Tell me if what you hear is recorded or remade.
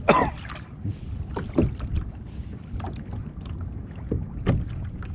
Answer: recorded